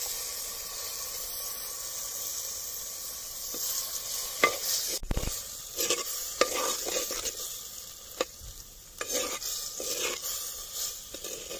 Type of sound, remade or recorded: recorded